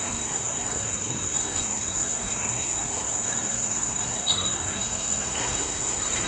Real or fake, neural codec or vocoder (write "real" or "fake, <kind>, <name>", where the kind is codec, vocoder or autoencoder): fake, codec, SNAC